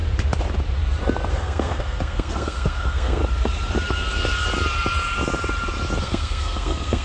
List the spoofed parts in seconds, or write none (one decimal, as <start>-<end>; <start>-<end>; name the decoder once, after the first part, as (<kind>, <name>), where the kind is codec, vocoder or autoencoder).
1.3-3.2 (codec, SNAC); 6.0-7.0